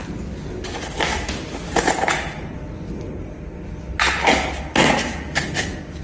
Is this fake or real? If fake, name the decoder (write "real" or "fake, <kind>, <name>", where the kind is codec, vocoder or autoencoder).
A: real